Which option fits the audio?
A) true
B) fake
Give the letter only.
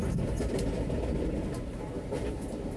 A